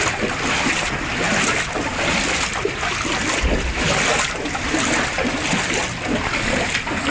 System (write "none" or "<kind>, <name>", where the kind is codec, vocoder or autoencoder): none